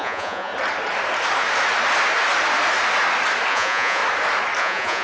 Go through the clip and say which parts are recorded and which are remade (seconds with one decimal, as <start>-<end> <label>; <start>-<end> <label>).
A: 0.0-0.5 remade; 0.5-3.5 recorded; 3.5-4.0 remade; 4.0-4.6 recorded; 4.6-5.0 remade